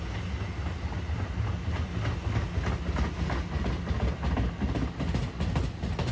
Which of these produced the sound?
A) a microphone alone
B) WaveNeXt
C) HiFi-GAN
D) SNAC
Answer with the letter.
A